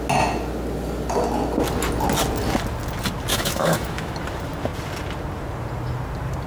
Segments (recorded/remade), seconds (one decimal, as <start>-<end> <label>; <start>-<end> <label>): 0.0-3.3 recorded; 3.3-4.1 remade; 4.1-6.5 recorded